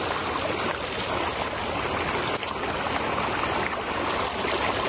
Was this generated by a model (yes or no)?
no